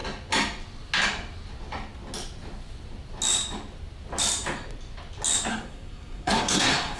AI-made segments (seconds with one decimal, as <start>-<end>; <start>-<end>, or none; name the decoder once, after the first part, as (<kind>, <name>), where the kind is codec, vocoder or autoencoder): 5.5-7.0 (codec, SNAC)